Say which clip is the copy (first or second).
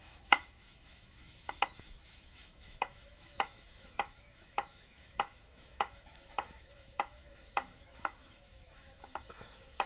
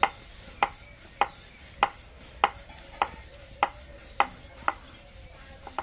first